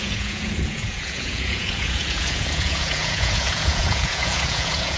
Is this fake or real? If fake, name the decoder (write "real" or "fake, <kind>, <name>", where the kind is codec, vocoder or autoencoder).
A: fake, vocoder, Vocos